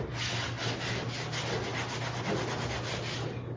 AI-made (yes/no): no